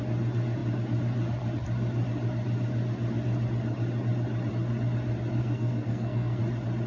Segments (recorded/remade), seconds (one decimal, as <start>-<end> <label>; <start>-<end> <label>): 0.0-5.4 recorded; 5.4-6.4 remade; 6.4-6.9 recorded